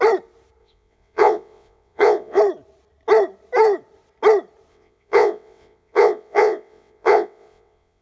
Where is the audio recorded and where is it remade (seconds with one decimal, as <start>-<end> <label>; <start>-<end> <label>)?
0.0-0.6 recorded; 0.6-2.4 remade; 2.4-4.7 recorded; 4.7-8.0 remade